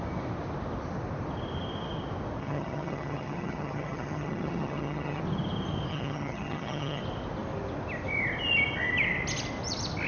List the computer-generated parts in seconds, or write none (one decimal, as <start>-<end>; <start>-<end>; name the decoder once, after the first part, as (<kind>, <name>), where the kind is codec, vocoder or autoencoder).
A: 2.4-5.2 (vocoder, HiFi-GAN); 5.9-7.0